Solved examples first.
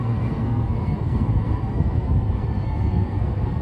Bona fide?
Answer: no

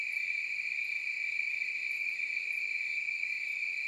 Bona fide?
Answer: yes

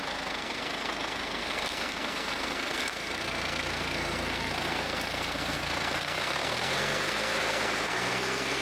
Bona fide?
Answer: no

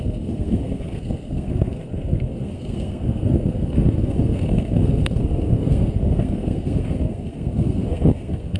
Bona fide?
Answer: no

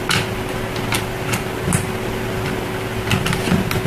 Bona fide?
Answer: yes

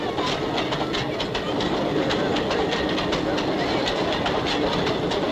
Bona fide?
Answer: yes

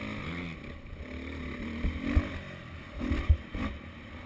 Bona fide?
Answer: yes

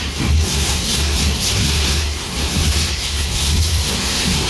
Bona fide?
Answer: no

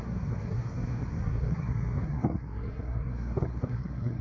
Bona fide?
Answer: no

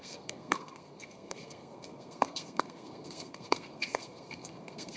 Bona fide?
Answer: no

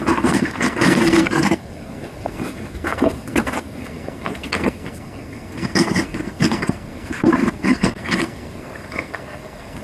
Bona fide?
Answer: no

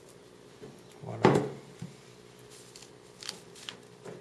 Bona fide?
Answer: yes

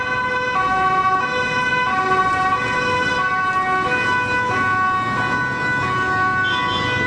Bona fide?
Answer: yes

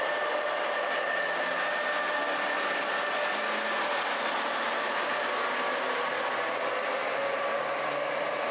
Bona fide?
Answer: yes